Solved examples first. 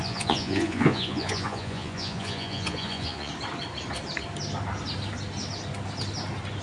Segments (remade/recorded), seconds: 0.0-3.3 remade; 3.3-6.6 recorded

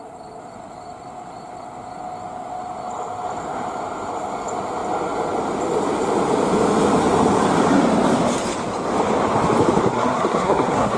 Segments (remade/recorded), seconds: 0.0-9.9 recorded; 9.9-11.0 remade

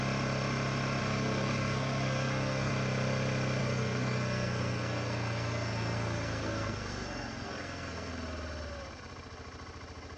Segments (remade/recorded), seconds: 0.0-1.0 recorded; 1.0-2.7 remade; 2.7-3.6 recorded; 3.6-8.1 remade; 8.1-10.2 recorded

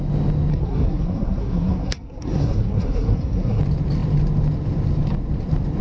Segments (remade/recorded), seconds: 0.0-0.5 recorded; 0.5-3.6 remade; 3.6-5.8 recorded

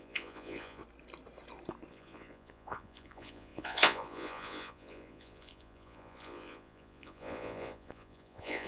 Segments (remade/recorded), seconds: 0.0-0.8 remade; 0.8-1.9 recorded; 1.9-8.7 remade

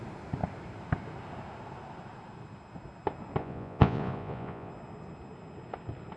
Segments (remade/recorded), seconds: 0.0-3.4 recorded; 3.4-4.7 remade; 4.7-6.2 recorded

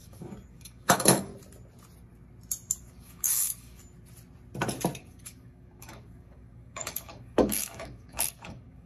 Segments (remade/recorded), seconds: 0.0-1.3 remade; 1.3-2.8 recorded; 2.8-3.8 remade; 3.8-5.0 recorded; 5.0-8.9 remade

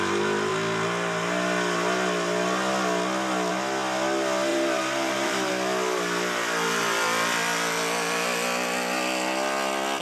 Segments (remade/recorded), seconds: 0.0-4.5 recorded; 4.5-5.5 remade; 5.5-10.0 recorded